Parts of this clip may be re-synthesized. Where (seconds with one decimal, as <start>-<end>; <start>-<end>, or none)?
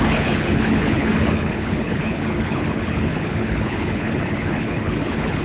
0.0-5.4